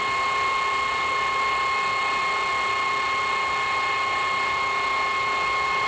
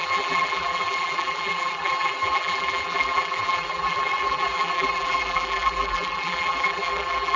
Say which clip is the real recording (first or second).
first